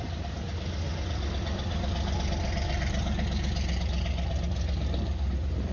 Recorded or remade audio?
recorded